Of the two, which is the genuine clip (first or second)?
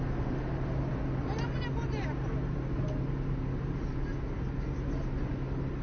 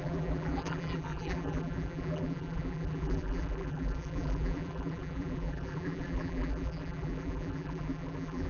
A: first